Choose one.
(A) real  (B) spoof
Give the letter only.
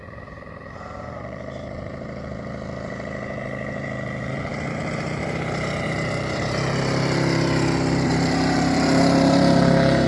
B